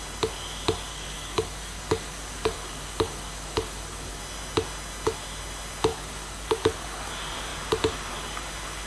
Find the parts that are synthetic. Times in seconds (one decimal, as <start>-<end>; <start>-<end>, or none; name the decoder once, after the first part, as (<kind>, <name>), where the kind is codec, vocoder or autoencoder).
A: 0.9-4.2 (codec, DAC); 5.9-7.1